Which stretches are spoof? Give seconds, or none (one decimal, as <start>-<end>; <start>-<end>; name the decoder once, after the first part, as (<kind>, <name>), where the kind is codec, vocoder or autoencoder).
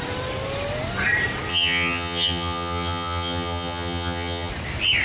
1.5-4.5 (vocoder, HiFi-GAN)